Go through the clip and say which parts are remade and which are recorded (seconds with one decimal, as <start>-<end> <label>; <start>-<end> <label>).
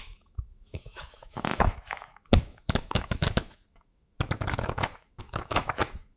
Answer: 0.0-6.2 remade